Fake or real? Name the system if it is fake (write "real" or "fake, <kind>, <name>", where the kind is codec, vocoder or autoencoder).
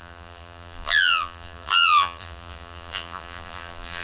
fake, vocoder, BigVGAN v2